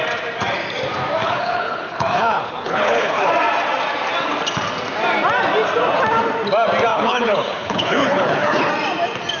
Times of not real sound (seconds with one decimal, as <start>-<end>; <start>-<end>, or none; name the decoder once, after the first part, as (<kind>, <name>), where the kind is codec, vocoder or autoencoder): 1.2-3.3 (codec, HILCodec); 6.9-8.7